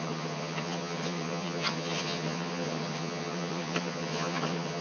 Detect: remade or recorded remade